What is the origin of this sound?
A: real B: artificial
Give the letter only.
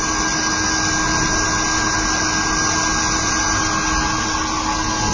A